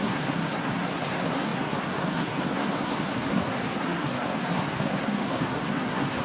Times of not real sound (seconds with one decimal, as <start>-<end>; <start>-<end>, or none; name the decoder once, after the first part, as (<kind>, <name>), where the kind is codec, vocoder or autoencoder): 0.0-6.2 (codec, SNAC)

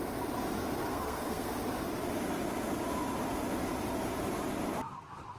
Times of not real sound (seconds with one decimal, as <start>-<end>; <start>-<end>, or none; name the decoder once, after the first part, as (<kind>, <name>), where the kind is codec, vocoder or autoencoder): 0.9-1.5 (codec, SNAC)